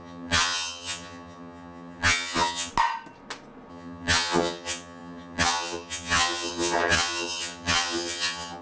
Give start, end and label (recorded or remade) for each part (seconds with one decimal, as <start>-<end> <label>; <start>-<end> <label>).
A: 0.0-2.7 remade; 2.7-3.7 recorded; 3.7-8.6 remade